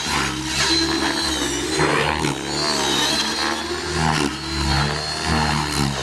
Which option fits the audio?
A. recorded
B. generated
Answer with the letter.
A